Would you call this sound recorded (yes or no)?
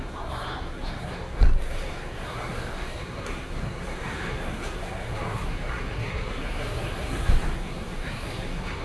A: no